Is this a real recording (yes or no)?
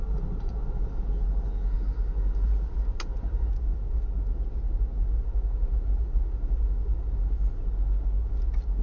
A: yes